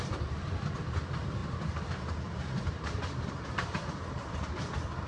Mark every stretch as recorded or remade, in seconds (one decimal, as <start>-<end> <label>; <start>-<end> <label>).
0.0-1.4 recorded; 1.4-4.5 remade; 4.5-5.1 recorded